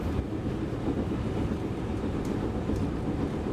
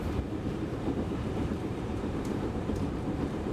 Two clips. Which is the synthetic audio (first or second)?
second